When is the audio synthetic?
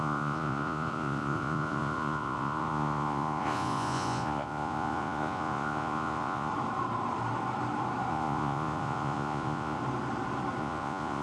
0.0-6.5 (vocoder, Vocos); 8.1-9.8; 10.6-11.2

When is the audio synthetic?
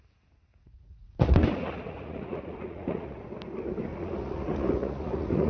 0.5-3.3 (vocoder, Vocos); 3.9-5.5